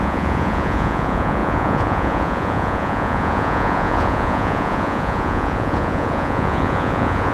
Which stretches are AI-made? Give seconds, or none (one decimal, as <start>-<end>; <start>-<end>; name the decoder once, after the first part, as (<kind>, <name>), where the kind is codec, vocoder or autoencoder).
0.0-7.3 (vocoder, Vocos)

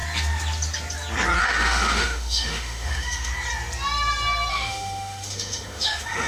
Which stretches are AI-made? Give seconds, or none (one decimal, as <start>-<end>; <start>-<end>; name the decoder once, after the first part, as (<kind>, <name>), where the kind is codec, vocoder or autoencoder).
1.4-3.3 (autoencoder, DAC-VAE); 4.5-6.3

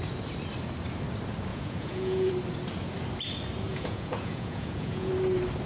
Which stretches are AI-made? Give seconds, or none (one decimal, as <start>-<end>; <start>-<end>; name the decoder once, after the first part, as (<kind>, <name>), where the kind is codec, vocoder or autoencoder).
1.5-2.3 (vocoder, Vocos); 3.7-5.1

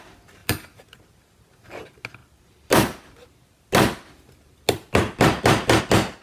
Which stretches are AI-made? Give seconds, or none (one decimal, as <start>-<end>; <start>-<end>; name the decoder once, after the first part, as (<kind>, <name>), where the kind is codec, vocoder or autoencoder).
none

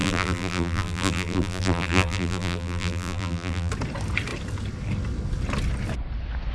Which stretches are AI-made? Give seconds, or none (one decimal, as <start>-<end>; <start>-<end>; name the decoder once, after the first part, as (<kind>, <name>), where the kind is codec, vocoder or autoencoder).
0.0-3.7 (vocoder, BigVGAN v2)

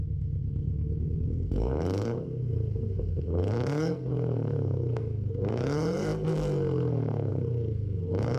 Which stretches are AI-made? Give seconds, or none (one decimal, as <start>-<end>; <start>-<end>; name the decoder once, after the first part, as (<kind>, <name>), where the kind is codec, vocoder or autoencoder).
0.0-8.4 (codec, SNAC)

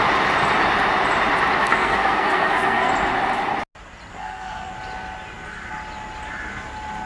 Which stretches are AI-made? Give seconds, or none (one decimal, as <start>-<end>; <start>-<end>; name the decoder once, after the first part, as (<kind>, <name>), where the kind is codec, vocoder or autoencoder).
1.6-2.9 (codec, SNAC); 4.1-4.7

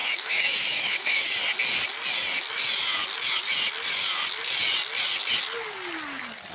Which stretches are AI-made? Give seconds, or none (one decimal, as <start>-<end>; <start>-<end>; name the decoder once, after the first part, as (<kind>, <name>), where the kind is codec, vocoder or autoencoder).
0.0-1.3 (autoencoder, DAC-VAE)